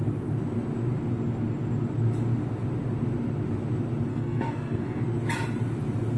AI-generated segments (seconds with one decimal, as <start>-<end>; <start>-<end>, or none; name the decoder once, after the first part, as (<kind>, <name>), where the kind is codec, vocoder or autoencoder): 4.1-5.0 (codec, SNAC)